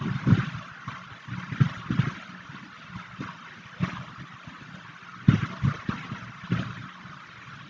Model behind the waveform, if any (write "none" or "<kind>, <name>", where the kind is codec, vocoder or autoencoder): none